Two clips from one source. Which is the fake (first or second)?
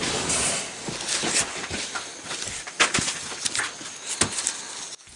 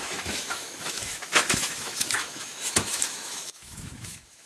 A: second